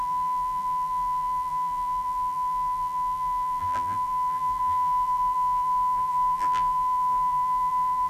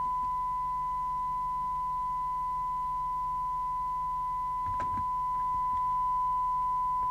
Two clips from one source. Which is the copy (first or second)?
first